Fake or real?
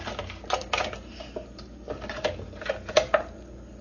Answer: real